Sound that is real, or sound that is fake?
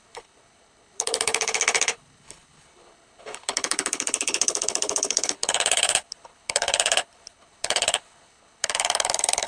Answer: fake